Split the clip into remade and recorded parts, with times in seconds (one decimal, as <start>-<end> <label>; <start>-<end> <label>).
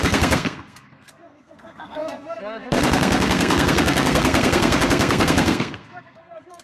0.0-6.6 remade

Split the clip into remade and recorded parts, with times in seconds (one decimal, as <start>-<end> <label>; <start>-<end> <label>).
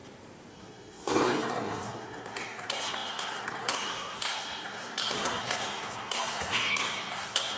0.0-0.5 recorded; 0.5-7.6 remade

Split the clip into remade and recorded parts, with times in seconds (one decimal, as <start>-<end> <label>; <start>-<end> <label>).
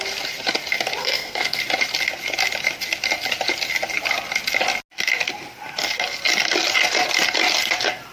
0.0-1.0 recorded; 1.0-1.6 remade; 1.6-8.1 recorded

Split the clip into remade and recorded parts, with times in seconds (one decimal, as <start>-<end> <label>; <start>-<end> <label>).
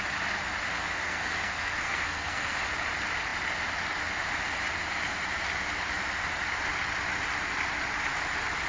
0.0-0.7 recorded; 0.7-2.6 remade; 2.6-8.7 recorded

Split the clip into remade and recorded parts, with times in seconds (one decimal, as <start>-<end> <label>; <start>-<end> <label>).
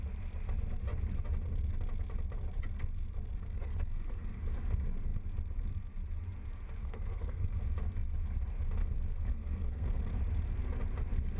0.0-3.4 recorded; 3.4-4.4 remade; 4.4-6.8 recorded; 6.8-7.6 remade; 7.6-8.8 recorded; 8.8-10.0 remade; 10.0-11.4 recorded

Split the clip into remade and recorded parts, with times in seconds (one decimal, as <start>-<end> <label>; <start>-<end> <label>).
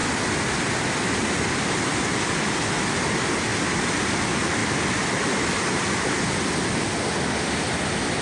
0.0-8.2 recorded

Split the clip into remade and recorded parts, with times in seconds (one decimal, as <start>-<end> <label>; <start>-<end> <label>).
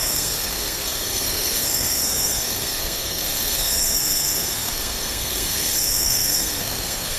0.0-7.2 remade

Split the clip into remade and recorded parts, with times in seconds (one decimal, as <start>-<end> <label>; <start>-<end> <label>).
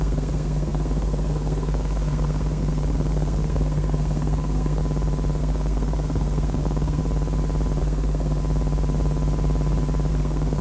0.0-4.8 remade; 4.8-5.4 recorded; 5.4-7.0 remade; 7.0-7.8 recorded; 7.8-8.4 remade; 8.4-10.1 recorded; 10.1-10.6 remade